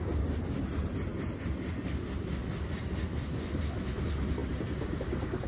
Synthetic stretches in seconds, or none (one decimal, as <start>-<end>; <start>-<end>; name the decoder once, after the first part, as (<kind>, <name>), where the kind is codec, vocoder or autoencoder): none